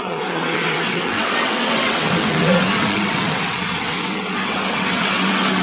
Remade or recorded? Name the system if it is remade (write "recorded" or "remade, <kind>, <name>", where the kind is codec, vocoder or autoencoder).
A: remade, vocoder, WaveNeXt